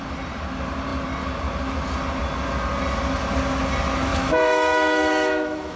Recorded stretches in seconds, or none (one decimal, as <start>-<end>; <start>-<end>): 0.0-4.1